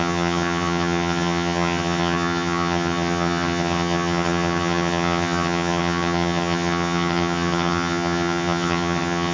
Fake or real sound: fake